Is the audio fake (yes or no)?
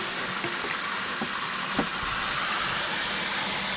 no